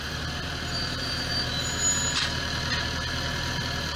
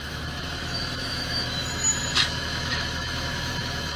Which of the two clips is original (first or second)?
first